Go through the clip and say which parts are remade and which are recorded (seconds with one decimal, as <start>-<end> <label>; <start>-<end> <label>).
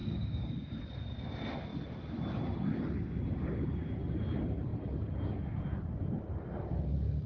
0.0-0.8 remade; 0.8-7.3 recorded